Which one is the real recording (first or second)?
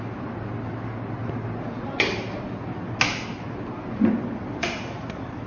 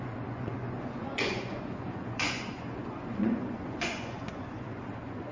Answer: first